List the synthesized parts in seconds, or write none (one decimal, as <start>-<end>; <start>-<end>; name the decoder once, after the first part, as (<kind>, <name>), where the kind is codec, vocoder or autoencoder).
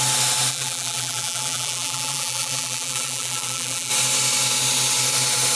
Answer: 0.5-3.9 (vocoder, BigVGAN v2)